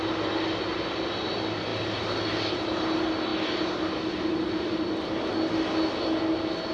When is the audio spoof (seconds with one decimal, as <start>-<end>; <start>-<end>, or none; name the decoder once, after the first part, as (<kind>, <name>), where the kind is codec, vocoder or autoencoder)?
none